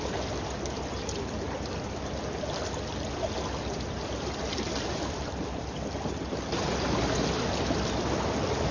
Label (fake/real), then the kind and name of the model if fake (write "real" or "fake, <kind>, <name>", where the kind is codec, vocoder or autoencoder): real